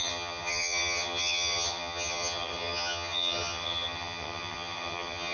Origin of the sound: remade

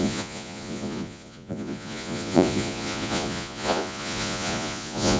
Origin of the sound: remade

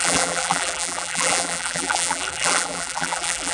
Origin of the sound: remade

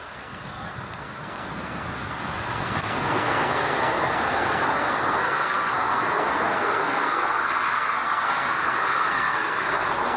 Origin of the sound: remade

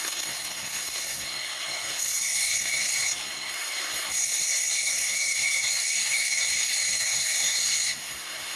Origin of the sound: remade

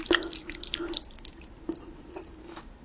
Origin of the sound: recorded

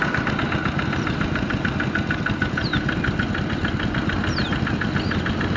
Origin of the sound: recorded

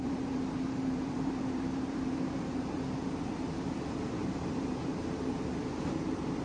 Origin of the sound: remade